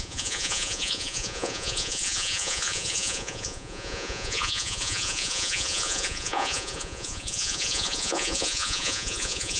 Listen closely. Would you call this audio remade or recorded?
remade